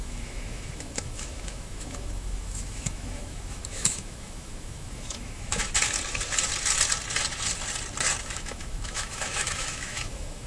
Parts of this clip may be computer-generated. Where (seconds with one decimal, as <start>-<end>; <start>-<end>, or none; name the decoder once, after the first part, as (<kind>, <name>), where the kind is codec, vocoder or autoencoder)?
0.0-5.6 (autoencoder, DAC-VAE); 8.2-10.5